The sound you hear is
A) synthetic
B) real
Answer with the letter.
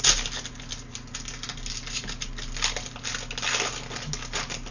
B